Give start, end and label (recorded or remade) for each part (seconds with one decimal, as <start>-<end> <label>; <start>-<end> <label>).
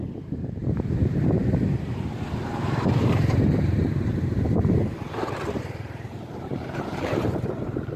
0.0-8.0 remade